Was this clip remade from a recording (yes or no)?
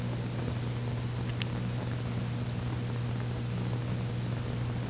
no